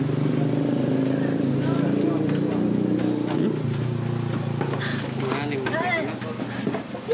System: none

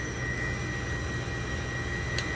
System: none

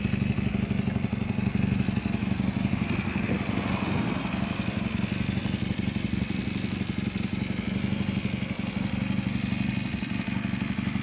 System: none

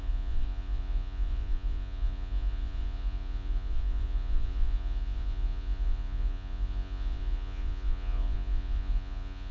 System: vocoder, Vocos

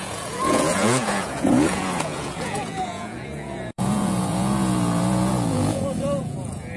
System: vocoder, Vocos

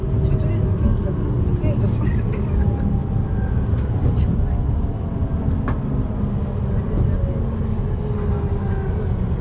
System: none